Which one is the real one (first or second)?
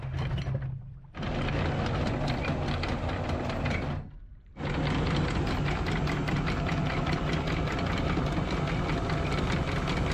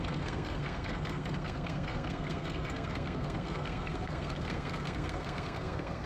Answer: first